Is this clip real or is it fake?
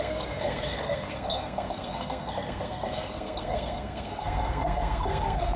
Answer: fake